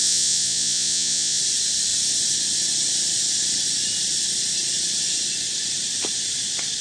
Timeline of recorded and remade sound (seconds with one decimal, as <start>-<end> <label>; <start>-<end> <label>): 0.0-1.4 remade; 1.4-6.8 recorded